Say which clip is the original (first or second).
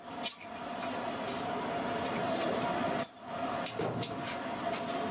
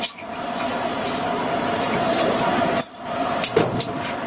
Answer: first